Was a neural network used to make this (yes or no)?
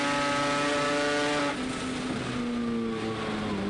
no